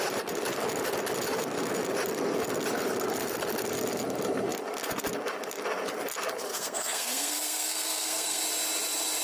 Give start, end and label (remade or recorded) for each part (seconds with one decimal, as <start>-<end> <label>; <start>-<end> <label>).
0.0-6.5 recorded; 6.5-8.4 remade; 8.4-9.2 recorded